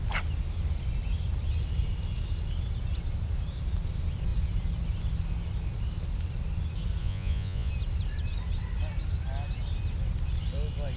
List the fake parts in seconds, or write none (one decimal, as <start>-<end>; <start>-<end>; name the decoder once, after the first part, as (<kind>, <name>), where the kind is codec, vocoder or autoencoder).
7.0-7.7 (vocoder, Vocos)